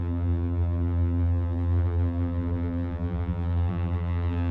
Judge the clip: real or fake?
fake